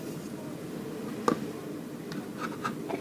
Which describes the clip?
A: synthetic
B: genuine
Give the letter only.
B